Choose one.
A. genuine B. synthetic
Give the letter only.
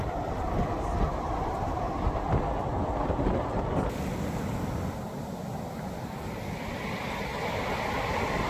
A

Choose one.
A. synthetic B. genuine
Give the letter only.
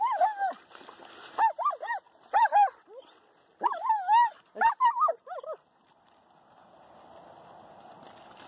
B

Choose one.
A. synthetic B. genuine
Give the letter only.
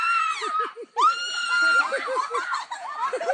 B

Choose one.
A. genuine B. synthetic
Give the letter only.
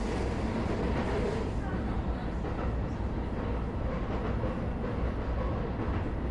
A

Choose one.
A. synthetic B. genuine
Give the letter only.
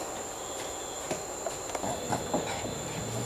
B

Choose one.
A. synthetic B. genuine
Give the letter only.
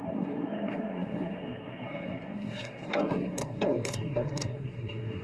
A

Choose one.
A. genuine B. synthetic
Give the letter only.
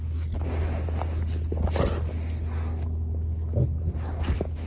A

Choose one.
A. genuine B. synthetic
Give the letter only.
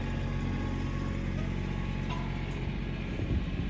A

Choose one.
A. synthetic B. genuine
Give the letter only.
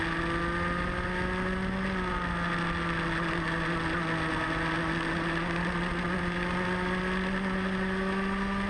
B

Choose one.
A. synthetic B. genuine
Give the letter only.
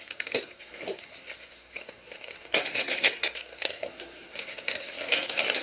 A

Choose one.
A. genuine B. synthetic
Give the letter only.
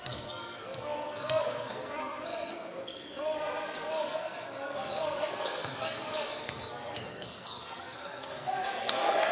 B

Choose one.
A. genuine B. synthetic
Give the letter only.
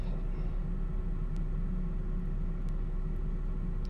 A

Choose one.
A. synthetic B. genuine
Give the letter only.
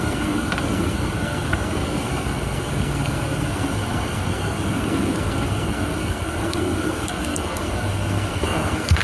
A